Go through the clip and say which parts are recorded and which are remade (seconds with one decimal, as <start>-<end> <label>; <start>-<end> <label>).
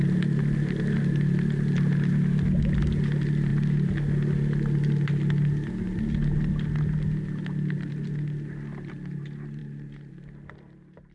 0.0-11.1 recorded